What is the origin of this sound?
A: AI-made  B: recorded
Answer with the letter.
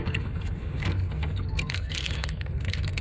A